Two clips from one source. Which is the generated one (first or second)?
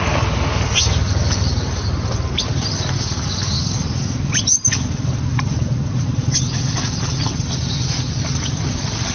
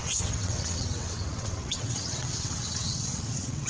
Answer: second